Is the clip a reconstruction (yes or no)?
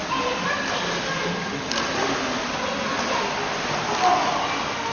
no